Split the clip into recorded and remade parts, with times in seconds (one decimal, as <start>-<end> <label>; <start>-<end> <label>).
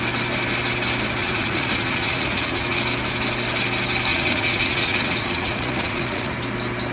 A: 0.0-1.2 recorded; 1.2-2.8 remade; 2.8-4.1 recorded; 4.1-6.3 remade; 6.3-6.9 recorded